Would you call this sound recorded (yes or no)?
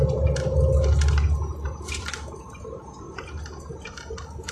yes